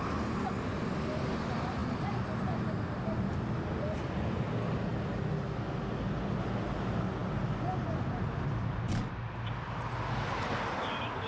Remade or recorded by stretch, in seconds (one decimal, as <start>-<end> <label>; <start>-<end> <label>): 0.0-11.3 recorded